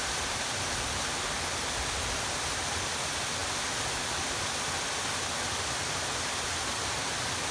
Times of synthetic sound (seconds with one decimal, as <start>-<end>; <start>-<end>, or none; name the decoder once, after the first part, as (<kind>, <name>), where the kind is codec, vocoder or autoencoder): none